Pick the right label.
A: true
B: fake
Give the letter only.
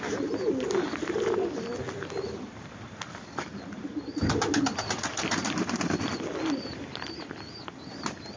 A